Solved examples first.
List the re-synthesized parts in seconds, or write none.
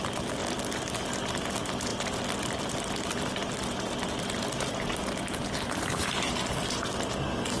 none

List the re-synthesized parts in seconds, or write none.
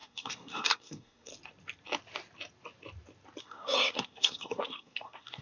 0.0-1.3 (codec, SNAC); 3.4-5.4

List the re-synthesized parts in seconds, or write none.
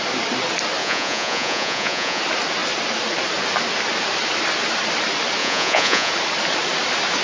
0.8-2.2 (vocoder, Vocos); 5.4-6.1